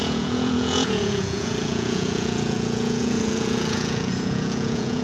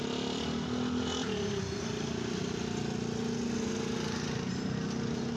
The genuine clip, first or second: second